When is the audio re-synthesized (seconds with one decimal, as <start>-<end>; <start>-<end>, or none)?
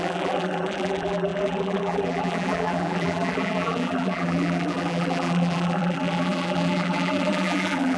0.0-8.0